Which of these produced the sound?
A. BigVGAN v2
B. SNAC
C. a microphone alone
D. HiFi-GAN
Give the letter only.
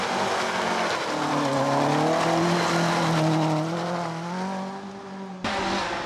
C